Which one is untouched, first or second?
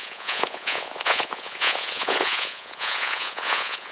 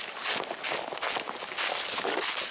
second